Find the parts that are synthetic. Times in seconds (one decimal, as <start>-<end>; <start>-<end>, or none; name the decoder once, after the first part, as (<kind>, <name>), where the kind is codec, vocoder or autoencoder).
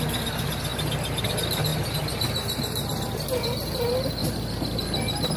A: none